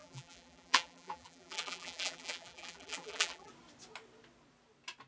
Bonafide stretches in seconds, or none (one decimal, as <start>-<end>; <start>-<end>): 3.5-5.1